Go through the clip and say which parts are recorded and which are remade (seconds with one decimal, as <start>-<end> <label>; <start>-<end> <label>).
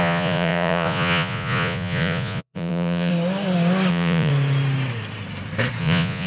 0.0-3.1 remade; 3.1-3.9 recorded; 3.9-4.3 remade; 4.3-5.8 recorded; 5.8-6.3 remade